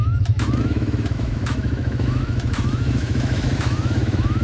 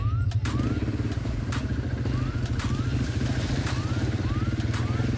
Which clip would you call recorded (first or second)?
second